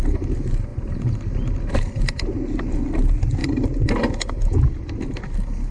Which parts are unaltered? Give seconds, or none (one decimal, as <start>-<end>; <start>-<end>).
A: 0.0-5.7